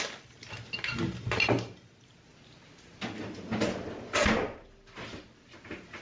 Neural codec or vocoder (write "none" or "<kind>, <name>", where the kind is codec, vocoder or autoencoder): none